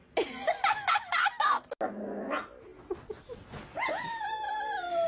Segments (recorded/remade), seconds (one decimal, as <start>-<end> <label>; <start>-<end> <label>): 0.0-5.1 recorded